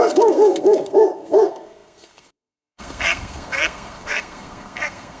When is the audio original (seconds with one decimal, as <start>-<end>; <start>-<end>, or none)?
none